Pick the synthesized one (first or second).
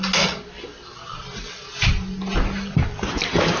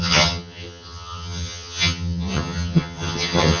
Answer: second